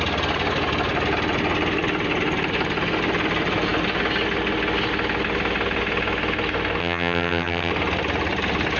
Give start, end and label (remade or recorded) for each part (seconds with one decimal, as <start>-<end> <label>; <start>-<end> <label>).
0.0-6.8 recorded; 6.8-7.7 remade; 7.7-8.8 recorded